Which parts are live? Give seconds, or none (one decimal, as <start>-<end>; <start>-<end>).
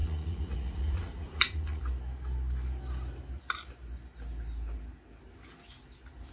1.8-6.3